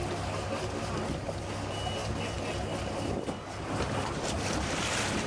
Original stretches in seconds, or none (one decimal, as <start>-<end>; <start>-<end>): 0.0-5.3

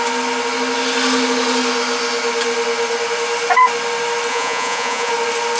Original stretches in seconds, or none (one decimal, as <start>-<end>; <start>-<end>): 0.0-4.3; 5.1-5.6

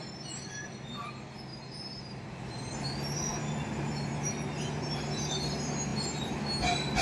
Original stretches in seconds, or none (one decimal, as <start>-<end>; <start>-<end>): 0.0-1.5; 2.7-3.3; 4.1-5.9; 6.4-7.0

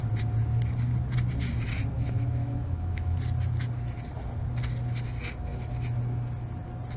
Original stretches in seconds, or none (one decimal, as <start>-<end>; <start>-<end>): 0.0-2.4; 3.2-7.0

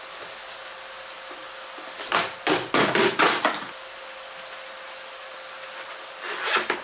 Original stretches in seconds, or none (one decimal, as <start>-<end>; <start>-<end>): 0.0-6.8

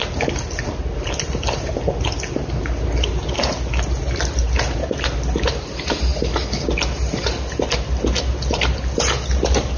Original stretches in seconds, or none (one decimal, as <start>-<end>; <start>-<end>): 0.0-9.8

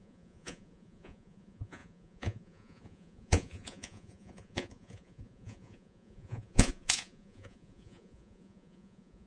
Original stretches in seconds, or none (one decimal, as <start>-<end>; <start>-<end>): none

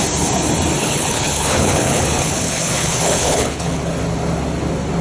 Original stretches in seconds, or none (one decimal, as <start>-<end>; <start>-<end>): 0.0-0.8; 3.8-5.0